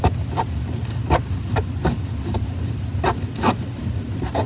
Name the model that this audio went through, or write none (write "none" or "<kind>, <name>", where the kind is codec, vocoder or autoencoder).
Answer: none